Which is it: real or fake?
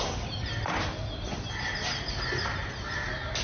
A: real